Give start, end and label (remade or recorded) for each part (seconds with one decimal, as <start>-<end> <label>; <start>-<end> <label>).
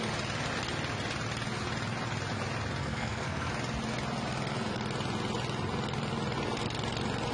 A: 0.0-2.8 recorded; 2.8-3.5 remade; 3.5-7.3 recorded